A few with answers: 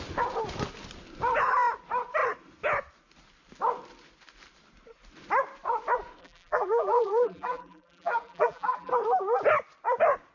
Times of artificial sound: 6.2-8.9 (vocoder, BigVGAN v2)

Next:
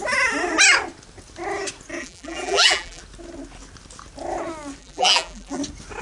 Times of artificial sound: 2.0-3.0 (vocoder, BigVGAN v2); 4.8-5.6

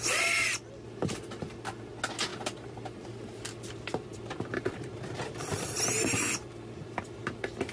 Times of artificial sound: 2.3-6.5 (vocoder, BigVGAN v2)

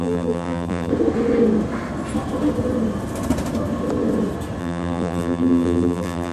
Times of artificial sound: 0.0-0.9 (vocoder, BigVGAN v2); 4.6-6.3

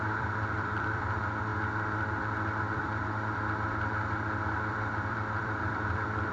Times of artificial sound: 0.0-1.5 (vocoder, BigVGAN v2); 2.2-3.4; 4.7-6.3

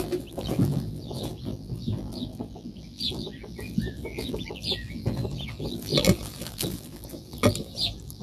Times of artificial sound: 0.0-8.2 (vocoder, BigVGAN v2)